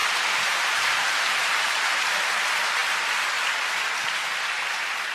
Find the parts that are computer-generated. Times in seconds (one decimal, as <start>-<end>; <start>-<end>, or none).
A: 0.0-2.1

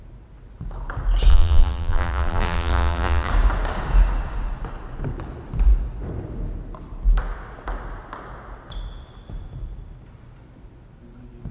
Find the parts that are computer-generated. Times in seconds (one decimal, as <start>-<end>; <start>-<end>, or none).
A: 1.3-3.3

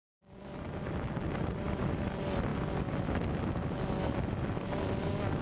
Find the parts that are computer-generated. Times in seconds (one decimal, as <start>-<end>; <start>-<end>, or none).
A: 0.0-2.5

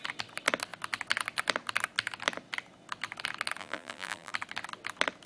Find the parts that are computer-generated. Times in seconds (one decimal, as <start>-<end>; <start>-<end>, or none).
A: 3.6-4.3

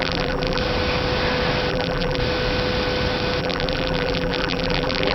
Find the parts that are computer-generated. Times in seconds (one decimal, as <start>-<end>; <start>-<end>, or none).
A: 0.0-0.6; 1.7-2.2; 3.4-5.1

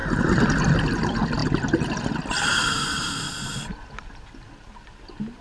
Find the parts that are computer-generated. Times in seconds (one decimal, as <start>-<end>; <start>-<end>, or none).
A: none